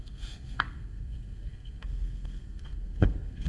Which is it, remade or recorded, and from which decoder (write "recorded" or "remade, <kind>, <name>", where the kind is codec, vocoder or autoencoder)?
remade, codec, SNAC